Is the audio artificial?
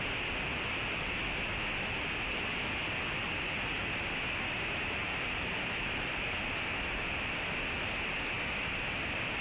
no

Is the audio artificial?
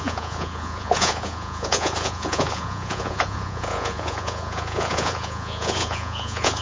yes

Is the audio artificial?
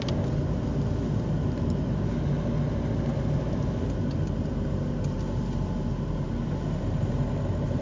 no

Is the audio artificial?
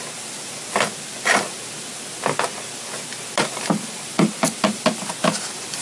no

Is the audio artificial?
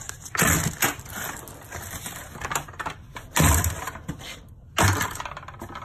no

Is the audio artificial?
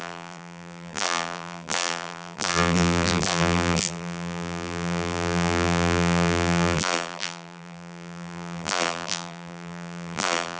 yes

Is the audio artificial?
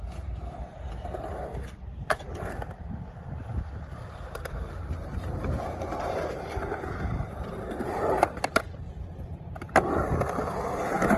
yes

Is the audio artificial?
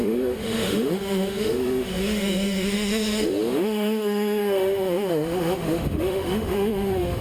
yes